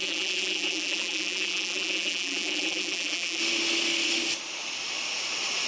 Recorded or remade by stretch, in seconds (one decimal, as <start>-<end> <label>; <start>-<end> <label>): 0.0-3.4 remade; 3.4-5.7 recorded